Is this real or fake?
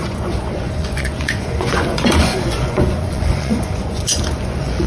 fake